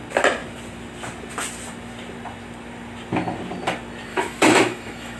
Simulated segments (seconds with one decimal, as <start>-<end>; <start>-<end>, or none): 4.1-5.2